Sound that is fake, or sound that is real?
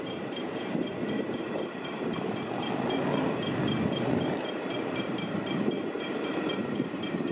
fake